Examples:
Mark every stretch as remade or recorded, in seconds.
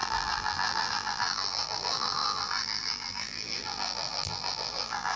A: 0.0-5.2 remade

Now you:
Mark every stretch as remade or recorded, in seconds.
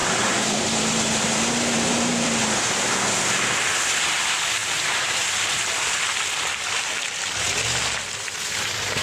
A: 0.0-2.4 remade; 2.4-4.6 recorded; 4.6-5.6 remade; 5.6-9.0 recorded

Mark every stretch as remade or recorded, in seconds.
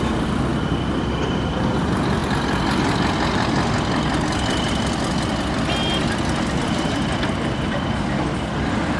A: 0.0-0.5 remade; 0.5-1.3 recorded; 1.3-2.2 remade; 2.2-6.5 recorded; 6.5-9.0 remade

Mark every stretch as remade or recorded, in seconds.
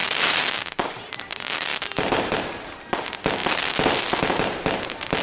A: 0.0-0.6 remade; 0.6-1.7 recorded; 1.7-2.4 remade; 2.4-3.4 recorded; 3.4-4.0 remade; 4.0-5.2 recorded